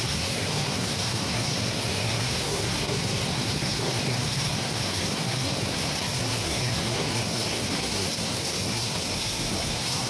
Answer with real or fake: fake